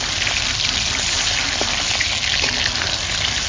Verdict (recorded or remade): recorded